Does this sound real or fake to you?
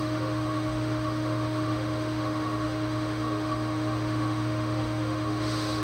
fake